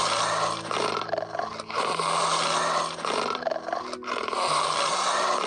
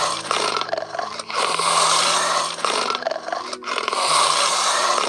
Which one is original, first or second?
first